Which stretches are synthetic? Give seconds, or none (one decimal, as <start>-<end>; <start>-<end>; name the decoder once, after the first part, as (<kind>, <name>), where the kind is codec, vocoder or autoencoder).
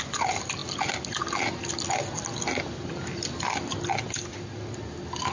none